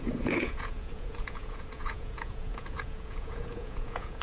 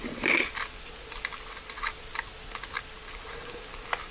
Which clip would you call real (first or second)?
second